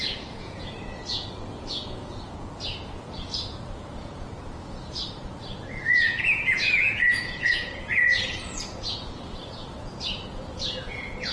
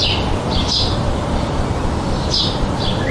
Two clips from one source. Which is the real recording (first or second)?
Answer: second